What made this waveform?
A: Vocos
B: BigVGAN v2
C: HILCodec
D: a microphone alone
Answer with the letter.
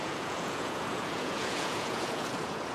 A